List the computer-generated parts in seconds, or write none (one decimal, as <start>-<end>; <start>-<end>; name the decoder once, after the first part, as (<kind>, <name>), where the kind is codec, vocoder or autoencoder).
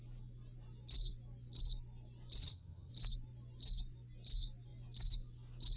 2.4-2.9 (vocoder, HiFi-GAN)